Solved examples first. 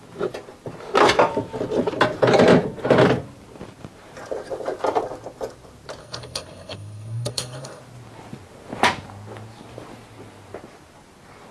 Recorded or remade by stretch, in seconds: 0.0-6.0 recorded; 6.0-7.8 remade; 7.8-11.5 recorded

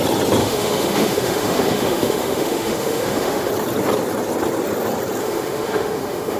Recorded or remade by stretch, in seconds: 0.0-0.4 recorded; 0.4-3.5 remade; 3.5-5.2 recorded; 5.2-6.4 remade